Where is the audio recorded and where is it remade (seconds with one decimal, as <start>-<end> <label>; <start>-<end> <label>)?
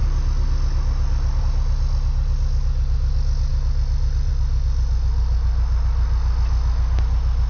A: 0.0-7.5 recorded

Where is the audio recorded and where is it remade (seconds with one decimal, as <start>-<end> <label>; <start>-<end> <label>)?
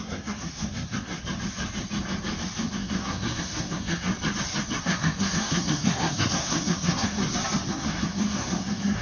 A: 0.0-1.2 remade; 1.2-2.7 recorded; 2.7-4.1 remade; 4.1-4.8 recorded; 4.8-7.2 remade; 7.2-7.7 recorded; 7.7-9.0 remade